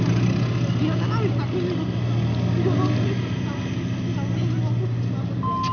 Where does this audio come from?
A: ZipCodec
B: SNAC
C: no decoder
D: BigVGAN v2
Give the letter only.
C